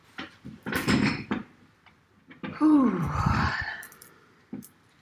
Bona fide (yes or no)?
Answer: no